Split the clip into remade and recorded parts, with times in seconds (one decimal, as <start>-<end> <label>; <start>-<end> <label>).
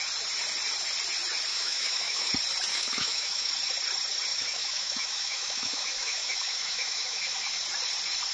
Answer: 0.0-1.5 recorded; 1.5-2.3 remade; 2.3-2.7 recorded; 2.7-3.5 remade; 3.5-4.3 recorded; 4.3-7.5 remade; 7.5-8.3 recorded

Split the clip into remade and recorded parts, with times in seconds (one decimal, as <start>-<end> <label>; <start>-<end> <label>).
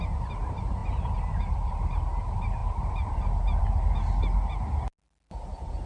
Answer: 0.0-5.9 recorded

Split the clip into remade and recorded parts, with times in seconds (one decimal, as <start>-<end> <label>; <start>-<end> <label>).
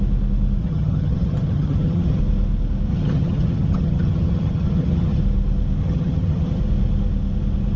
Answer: 0.0-0.6 recorded; 0.6-2.2 remade; 2.2-2.9 recorded; 2.9-5.2 remade; 5.2-5.8 recorded; 5.8-6.6 remade; 6.6-7.8 recorded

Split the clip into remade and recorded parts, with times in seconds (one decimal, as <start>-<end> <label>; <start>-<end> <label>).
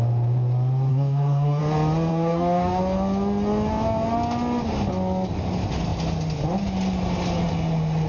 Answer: 0.0-0.9 recorded; 0.9-1.6 remade; 1.6-2.1 recorded; 2.1-2.8 remade; 2.8-8.1 recorded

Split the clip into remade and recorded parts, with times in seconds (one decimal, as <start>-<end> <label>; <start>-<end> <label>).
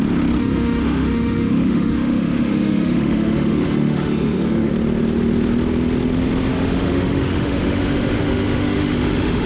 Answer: 0.0-0.4 recorded; 0.4-4.7 remade; 4.7-6.5 recorded; 6.5-9.5 remade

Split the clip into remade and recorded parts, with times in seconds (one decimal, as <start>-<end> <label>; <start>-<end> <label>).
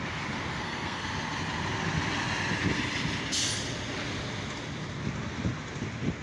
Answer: 0.0-0.5 recorded; 0.5-1.1 remade; 1.1-6.2 recorded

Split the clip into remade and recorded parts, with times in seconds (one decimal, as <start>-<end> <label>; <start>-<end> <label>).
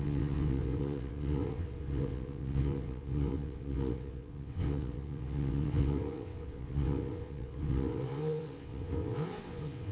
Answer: 0.0-9.9 remade